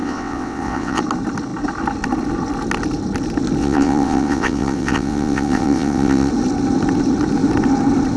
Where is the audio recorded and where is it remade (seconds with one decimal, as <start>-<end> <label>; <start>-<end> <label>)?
0.0-1.0 remade; 1.0-3.6 recorded; 3.6-6.3 remade; 6.3-8.2 recorded

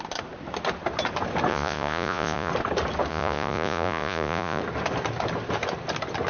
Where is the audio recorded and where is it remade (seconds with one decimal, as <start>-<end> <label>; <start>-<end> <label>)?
0.0-1.5 recorded; 1.5-2.5 remade; 2.5-3.1 recorded; 3.1-4.6 remade; 4.6-6.3 recorded

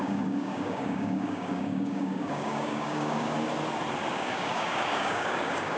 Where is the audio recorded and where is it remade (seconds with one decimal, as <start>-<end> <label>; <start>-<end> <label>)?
0.0-3.5 remade; 3.5-4.1 recorded; 4.1-5.8 remade

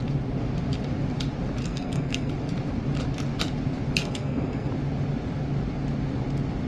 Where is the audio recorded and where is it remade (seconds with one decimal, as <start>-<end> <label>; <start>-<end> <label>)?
0.0-1.6 recorded; 1.6-2.3 remade; 2.3-4.0 recorded; 4.0-4.7 remade; 4.7-6.7 recorded

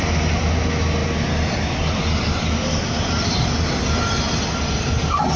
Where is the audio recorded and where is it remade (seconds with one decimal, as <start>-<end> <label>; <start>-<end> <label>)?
0.0-5.4 recorded

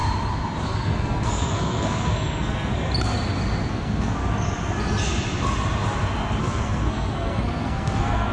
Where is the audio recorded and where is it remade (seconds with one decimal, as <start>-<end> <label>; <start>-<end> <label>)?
0.0-0.6 recorded; 0.6-2.7 remade; 2.7-3.7 recorded; 3.7-4.2 remade; 4.2-6.4 recorded; 6.4-8.3 remade

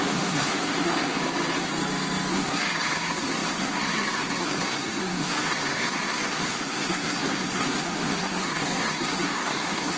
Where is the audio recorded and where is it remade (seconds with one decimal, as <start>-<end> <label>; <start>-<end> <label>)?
0.0-1.2 remade; 1.2-2.3 recorded; 2.3-10.0 remade

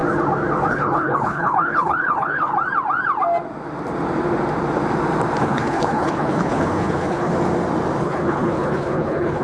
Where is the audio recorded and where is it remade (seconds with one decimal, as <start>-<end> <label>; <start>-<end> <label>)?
0.0-0.7 recorded; 0.7-2.5 remade; 2.5-5.4 recorded; 5.4-7.3 remade; 7.3-8.0 recorded; 8.0-9.4 remade